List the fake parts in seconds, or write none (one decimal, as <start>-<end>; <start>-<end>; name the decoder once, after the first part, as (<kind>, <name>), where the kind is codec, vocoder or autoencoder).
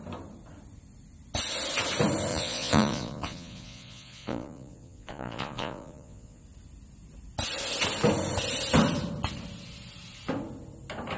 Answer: 2.3-6.4 (vocoder, Vocos)